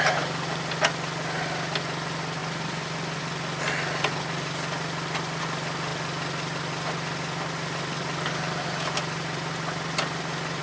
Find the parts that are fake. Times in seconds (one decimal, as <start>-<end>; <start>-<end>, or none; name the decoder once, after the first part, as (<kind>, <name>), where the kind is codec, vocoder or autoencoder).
none